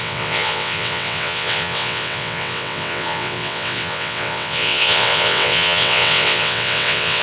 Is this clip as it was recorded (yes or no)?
no